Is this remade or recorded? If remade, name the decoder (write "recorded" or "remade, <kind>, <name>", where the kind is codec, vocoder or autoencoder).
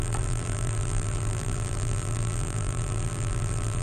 remade, vocoder, BigVGAN v2